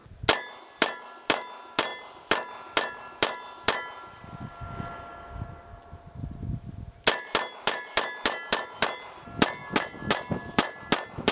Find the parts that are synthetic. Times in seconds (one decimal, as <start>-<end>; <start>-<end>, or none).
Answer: none